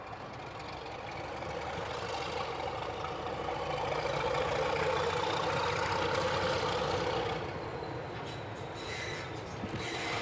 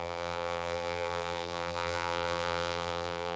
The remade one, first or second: second